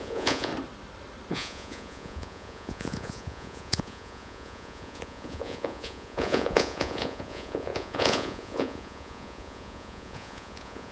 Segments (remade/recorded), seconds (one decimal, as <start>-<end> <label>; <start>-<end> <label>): 0.0-0.5 remade; 0.5-1.3 recorded; 1.3-10.9 remade